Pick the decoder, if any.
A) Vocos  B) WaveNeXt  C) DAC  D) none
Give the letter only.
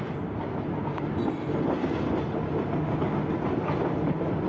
D